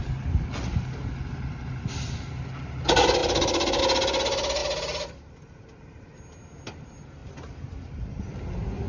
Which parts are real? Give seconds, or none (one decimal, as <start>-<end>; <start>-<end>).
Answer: 0.0-3.2; 3.8-4.6; 5.2-7.2; 8.0-8.9